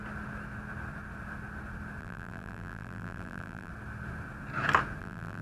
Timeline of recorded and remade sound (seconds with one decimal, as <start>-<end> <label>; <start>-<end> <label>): 0.0-2.0 recorded; 2.0-3.7 remade; 3.7-5.0 recorded; 5.0-5.4 remade